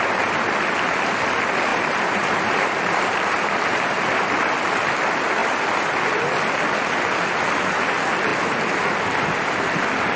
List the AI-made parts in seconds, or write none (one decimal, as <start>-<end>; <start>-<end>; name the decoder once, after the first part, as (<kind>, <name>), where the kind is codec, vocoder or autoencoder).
1.7-4.3 (vocoder, BigVGAN v2); 8.3-9.0